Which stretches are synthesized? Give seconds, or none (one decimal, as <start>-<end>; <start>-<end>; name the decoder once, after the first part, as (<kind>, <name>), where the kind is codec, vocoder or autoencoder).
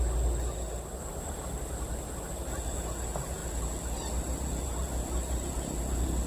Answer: none